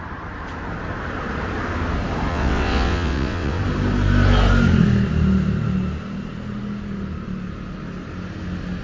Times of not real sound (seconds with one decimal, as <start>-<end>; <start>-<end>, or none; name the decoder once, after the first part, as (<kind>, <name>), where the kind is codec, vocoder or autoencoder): 2.3-3.6 (vocoder, WaveNeXt)